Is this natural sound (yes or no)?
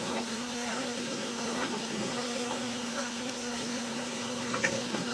no